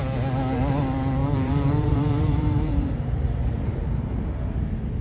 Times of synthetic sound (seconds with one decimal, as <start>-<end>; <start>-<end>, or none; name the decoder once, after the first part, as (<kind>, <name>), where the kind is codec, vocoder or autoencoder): 1.2-4.2 (vocoder, BigVGAN v2)